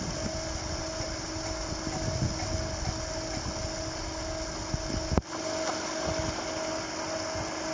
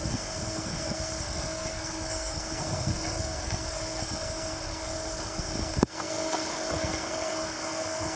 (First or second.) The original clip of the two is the first